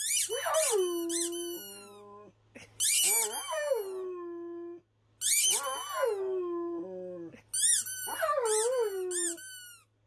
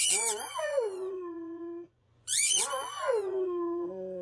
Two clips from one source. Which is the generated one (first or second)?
second